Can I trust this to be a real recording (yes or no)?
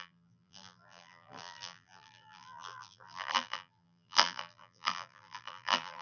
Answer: no